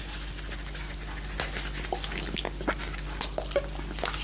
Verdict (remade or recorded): recorded